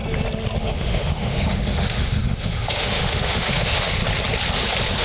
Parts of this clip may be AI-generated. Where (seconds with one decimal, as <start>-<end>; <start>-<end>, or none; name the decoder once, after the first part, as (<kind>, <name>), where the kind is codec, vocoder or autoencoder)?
0.6-4.0 (autoencoder, DAC-VAE)